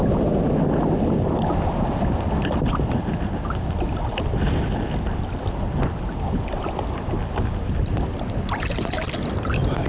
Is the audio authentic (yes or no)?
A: yes